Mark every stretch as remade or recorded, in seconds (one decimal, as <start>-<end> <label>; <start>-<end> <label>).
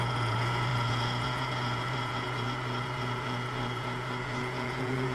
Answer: 0.0-5.1 remade